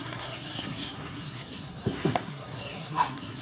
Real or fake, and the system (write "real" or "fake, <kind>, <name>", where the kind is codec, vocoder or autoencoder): fake, codec, SNAC